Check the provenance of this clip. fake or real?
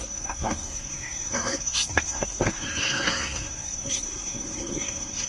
fake